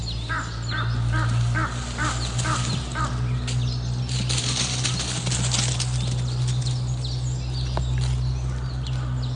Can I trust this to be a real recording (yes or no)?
yes